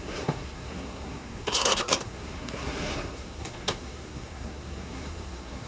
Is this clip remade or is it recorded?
remade